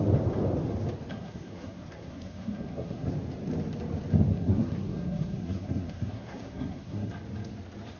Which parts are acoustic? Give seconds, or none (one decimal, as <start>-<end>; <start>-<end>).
0.0-1.1; 3.1-4.3; 7.1-8.0